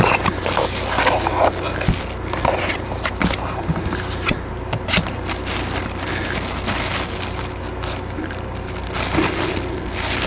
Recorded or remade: recorded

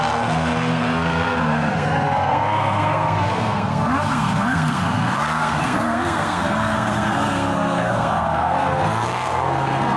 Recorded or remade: remade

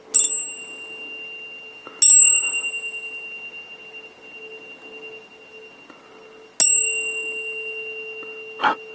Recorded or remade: recorded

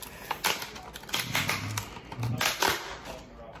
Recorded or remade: recorded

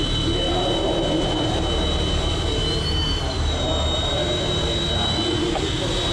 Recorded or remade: remade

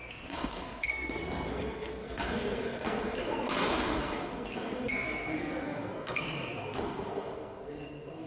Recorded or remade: remade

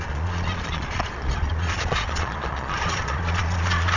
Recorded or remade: remade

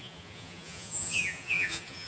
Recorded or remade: remade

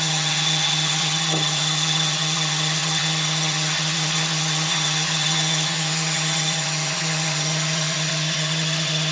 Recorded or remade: remade